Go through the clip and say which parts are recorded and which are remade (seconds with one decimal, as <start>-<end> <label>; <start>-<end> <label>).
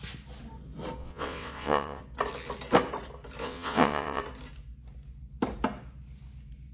0.0-1.0 recorded; 1.0-2.0 remade; 2.0-3.4 recorded; 3.4-4.2 remade; 4.2-6.7 recorded